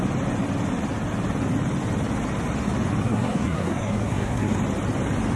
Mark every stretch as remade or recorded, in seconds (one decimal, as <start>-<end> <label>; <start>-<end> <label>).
0.0-3.0 recorded; 3.0-4.6 remade; 4.6-5.4 recorded